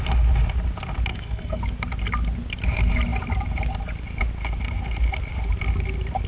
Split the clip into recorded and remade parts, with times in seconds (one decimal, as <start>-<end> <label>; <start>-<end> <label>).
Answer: 0.0-1.1 recorded; 1.1-1.6 remade; 1.6-6.3 recorded